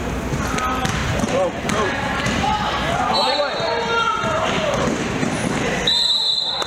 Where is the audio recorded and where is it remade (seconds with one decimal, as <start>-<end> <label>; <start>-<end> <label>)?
0.0-1.0 recorded; 1.0-2.7 remade; 2.7-4.1 recorded; 4.1-5.9 remade; 5.9-6.7 recorded